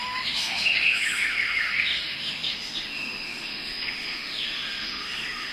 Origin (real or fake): fake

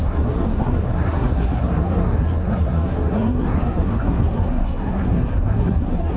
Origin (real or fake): fake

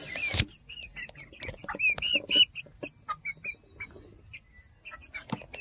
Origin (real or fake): real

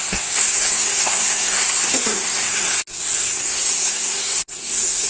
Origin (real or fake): fake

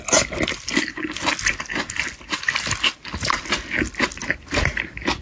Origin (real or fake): real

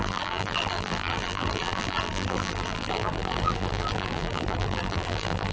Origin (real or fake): fake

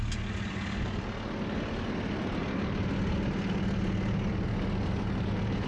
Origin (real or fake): real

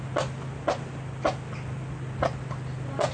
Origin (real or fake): real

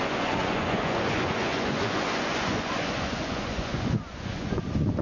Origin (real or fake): fake